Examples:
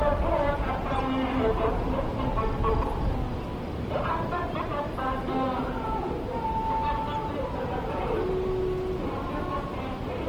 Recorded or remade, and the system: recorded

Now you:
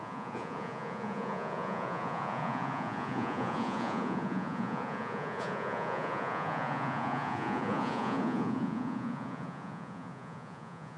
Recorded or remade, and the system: remade, vocoder, Vocos